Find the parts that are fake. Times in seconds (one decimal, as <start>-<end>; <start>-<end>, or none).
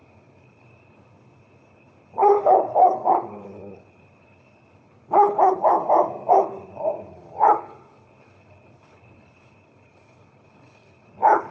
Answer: 0.0-5.8; 6.3-11.5